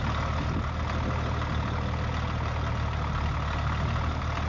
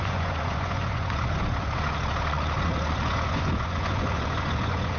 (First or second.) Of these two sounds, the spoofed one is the second